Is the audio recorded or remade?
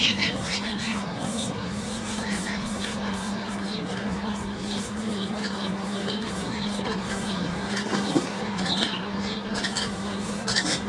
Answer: remade